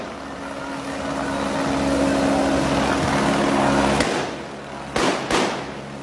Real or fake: real